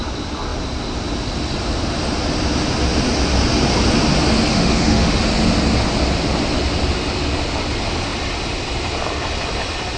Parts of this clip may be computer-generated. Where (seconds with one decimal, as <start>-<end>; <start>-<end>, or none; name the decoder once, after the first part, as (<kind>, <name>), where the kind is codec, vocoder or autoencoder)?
4.5-5.2 (autoencoder, DAC-VAE)